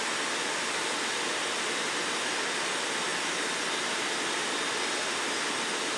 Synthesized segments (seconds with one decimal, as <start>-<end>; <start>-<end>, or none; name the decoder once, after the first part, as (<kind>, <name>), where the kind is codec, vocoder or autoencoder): none